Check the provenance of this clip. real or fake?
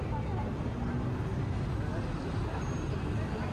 real